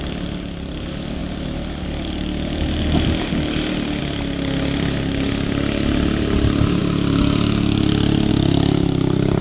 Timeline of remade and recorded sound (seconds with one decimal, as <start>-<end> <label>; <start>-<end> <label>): 0.0-9.4 recorded